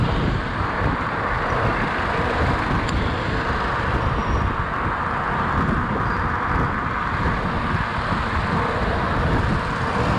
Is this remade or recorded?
recorded